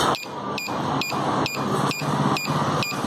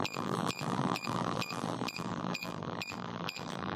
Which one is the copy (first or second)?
second